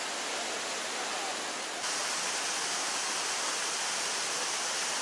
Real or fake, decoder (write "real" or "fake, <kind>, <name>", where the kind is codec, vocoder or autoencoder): real